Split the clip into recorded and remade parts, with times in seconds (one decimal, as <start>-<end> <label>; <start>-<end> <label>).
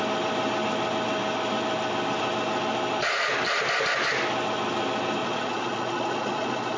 0.0-5.2 recorded; 5.2-6.8 remade